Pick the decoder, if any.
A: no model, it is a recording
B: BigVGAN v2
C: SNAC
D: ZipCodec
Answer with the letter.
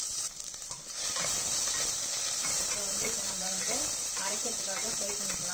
B